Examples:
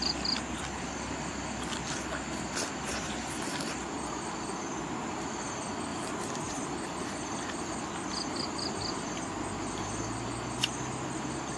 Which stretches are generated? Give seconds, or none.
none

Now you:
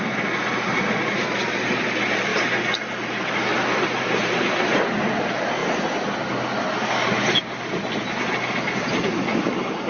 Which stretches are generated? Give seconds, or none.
none

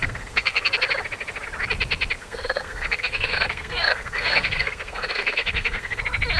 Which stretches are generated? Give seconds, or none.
0.0-0.7 (codec, SNAC); 2.2-6.0